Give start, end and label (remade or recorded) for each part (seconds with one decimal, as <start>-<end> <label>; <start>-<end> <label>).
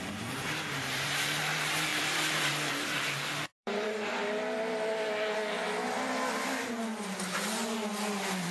0.0-4.2 remade; 4.2-8.0 recorded; 8.0-8.5 remade